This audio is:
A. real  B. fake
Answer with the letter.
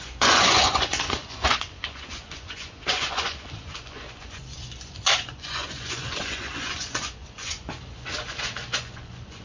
B